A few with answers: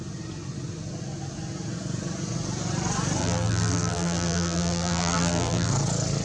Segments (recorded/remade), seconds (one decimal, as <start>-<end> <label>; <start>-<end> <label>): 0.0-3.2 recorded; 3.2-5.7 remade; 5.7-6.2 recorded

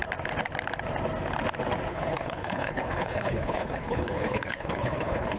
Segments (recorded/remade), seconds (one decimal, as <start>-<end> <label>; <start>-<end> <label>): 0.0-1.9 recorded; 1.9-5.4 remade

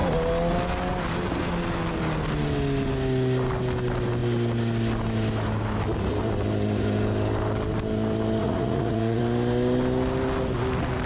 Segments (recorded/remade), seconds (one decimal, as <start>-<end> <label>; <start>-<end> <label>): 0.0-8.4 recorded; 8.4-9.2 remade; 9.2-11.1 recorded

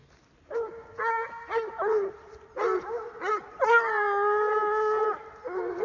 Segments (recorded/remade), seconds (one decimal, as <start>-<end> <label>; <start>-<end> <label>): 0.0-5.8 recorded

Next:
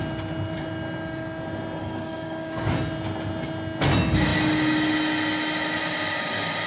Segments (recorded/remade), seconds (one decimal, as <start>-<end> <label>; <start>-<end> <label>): 0.0-1.8 recorded; 1.8-2.6 remade; 2.6-6.7 recorded